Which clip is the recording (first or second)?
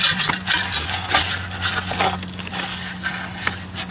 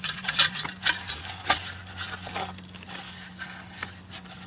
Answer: first